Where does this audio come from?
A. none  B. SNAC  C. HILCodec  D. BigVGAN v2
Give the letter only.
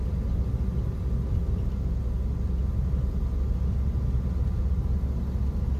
A